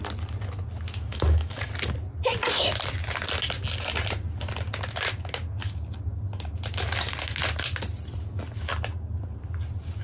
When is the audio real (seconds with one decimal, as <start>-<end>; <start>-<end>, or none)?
0.0-1.1; 1.7-10.0